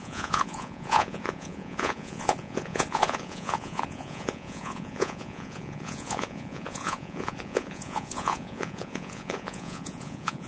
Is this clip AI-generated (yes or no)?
yes